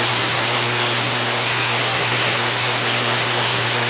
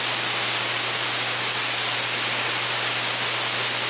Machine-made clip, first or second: first